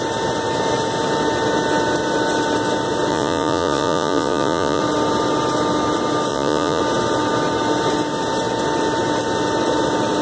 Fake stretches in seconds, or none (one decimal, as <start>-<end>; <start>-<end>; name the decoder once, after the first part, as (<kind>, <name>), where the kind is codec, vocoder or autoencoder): 3.1-4.8 (vocoder, Vocos); 6.3-6.8